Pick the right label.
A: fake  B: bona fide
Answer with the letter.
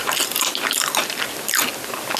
B